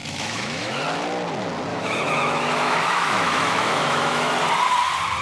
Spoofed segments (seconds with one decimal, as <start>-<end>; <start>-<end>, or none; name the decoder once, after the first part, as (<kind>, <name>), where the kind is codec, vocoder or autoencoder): 0.0-0.8 (autoencoder, DAC-VAE); 1.7-4.3